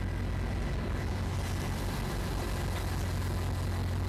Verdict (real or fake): real